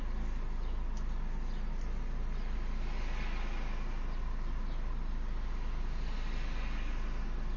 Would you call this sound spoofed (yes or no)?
no